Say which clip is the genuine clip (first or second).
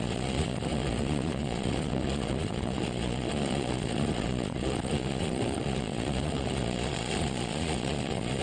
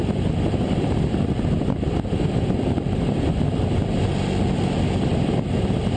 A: second